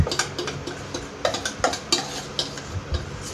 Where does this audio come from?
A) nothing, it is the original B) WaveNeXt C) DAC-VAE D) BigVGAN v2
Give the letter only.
A